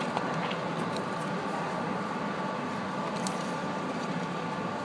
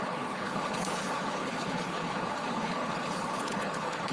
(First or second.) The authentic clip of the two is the first